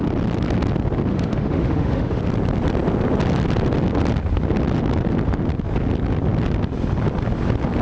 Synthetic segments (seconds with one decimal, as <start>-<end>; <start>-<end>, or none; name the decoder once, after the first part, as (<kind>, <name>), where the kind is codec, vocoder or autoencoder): 1.1-2.2 (autoencoder, DAC-VAE)